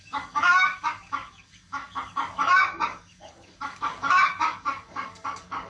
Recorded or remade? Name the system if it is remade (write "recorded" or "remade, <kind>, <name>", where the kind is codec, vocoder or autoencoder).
remade, codec, DAC